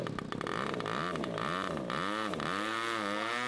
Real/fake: real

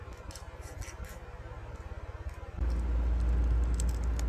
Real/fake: real